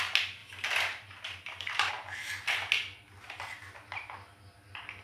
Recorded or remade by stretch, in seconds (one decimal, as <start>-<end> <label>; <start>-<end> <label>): 0.0-0.4 recorded; 0.4-1.9 remade; 1.9-5.0 recorded